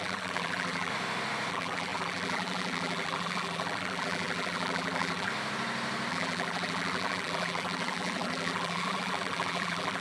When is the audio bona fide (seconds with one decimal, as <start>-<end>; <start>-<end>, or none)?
0.9-1.5; 5.3-6.1